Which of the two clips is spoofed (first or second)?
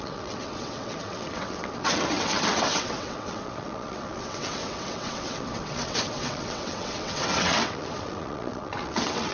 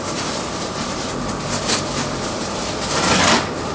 first